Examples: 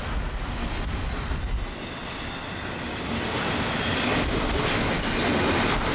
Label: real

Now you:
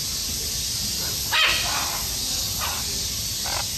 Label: real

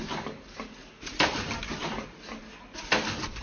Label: real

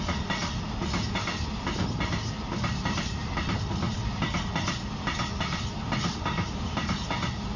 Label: real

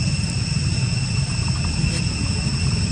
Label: real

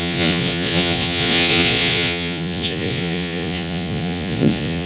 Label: fake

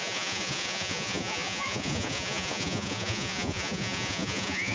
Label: fake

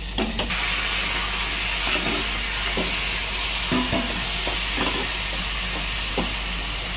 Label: real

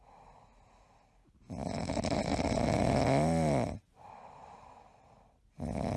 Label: real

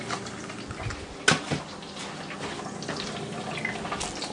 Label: real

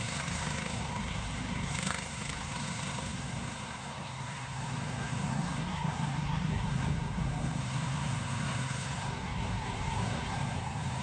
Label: fake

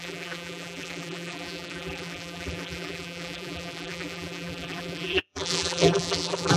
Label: fake